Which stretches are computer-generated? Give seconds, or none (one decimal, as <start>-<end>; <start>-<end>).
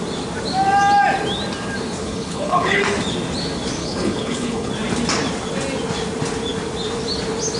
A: 2.0-2.8; 3.8-4.7